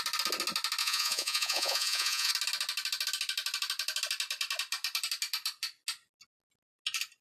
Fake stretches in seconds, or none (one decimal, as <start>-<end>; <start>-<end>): 0.8-2.3